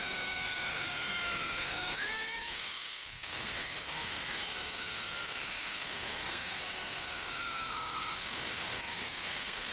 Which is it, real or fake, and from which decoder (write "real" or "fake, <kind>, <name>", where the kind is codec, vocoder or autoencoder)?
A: fake, codec, SNAC